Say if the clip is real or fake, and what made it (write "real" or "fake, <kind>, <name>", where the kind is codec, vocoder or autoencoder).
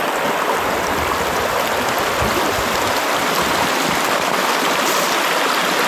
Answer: real